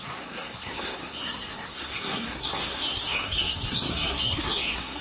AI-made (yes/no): yes